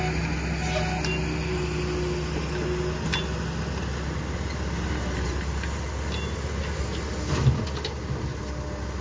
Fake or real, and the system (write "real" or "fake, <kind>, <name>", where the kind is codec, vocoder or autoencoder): real